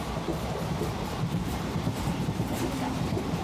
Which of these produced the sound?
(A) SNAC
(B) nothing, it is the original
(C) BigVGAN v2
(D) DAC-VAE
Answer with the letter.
C